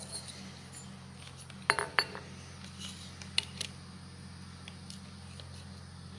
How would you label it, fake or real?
real